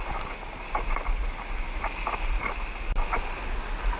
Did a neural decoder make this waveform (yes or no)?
no